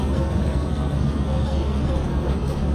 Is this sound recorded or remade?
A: remade